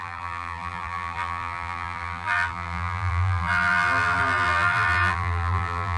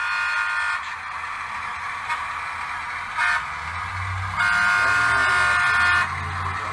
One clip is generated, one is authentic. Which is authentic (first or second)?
second